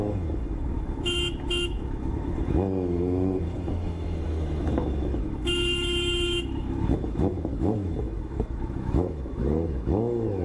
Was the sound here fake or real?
fake